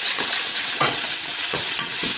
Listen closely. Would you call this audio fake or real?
fake